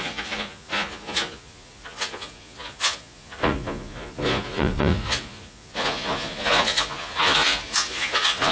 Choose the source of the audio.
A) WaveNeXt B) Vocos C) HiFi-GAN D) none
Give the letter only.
B